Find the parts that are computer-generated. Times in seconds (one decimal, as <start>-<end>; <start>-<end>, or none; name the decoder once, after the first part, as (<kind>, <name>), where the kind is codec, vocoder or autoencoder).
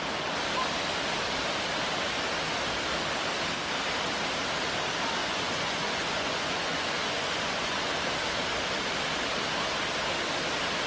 5.2-7.9 (vocoder, Vocos)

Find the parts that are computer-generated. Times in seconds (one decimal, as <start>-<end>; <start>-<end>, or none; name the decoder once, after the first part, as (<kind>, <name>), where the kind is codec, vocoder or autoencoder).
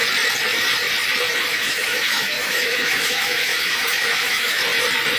1.5-4.6 (autoencoder, DAC-VAE)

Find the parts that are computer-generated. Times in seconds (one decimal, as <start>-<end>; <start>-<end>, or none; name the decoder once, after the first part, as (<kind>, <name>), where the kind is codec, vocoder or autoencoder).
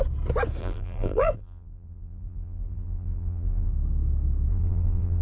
0.6-3.7 (vocoder, BigVGAN v2); 4.5-5.2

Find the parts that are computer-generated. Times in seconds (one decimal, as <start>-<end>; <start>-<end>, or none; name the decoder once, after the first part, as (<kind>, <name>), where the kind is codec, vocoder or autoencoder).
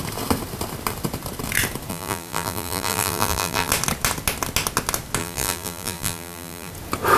1.9-3.7 (vocoder, BigVGAN v2); 5.2-6.7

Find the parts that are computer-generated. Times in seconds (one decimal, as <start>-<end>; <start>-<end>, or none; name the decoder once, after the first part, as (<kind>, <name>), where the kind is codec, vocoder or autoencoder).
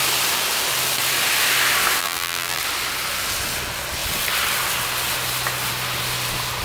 2.0-2.6 (vocoder, BigVGAN v2)